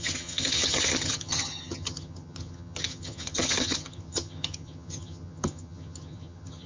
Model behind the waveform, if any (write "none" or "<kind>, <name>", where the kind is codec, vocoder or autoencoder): vocoder, HiFi-GAN